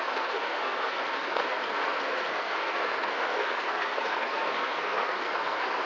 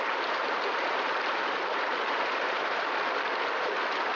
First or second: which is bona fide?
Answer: second